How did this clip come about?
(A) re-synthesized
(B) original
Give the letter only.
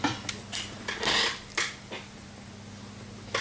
B